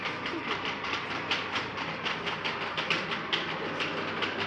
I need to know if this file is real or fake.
fake